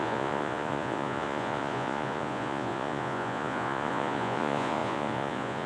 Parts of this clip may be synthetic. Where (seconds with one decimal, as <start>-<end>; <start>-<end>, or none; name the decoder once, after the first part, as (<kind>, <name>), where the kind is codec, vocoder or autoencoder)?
0.0-5.7 (vocoder, Vocos)